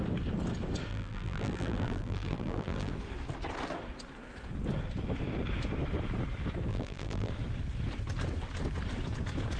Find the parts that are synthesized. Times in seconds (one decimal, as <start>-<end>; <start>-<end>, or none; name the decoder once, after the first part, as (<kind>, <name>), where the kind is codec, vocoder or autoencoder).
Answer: 0.9-2.9 (vocoder, BigVGAN v2); 6.7-7.3

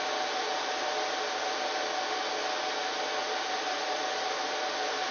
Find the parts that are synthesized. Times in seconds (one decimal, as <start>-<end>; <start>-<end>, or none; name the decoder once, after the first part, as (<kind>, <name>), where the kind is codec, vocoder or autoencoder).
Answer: 3.2-4.0 (vocoder, BigVGAN v2)

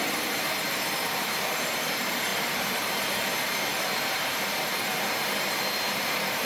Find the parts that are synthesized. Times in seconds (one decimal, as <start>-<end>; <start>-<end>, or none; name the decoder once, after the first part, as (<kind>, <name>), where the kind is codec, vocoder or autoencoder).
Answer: 0.0-6.5 (vocoder, BigVGAN v2)

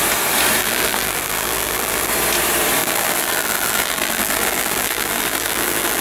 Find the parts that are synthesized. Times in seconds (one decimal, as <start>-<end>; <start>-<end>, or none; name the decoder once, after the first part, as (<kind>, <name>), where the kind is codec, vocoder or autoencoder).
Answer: 0.6-2.1 (vocoder, BigVGAN v2); 2.8-6.0

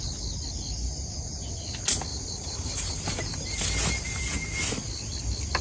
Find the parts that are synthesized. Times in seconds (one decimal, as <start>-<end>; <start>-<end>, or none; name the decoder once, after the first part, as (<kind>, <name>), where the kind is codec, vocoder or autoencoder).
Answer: 2.1-4.2 (vocoder, BigVGAN v2)

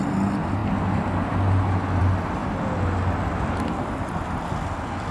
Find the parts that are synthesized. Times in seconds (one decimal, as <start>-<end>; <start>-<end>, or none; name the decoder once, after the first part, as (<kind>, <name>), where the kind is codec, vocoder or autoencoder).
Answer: none